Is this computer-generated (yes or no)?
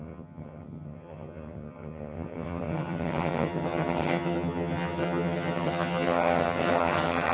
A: yes